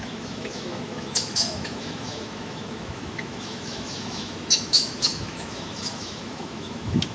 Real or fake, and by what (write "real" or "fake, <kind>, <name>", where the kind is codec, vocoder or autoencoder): fake, autoencoder, DAC-VAE